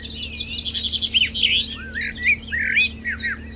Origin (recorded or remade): recorded